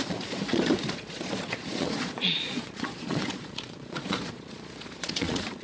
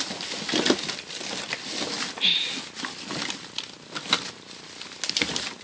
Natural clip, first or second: second